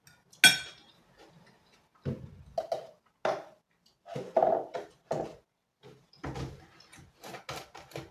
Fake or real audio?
real